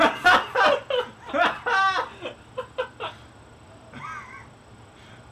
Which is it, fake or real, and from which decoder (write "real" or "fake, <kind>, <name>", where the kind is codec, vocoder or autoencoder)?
real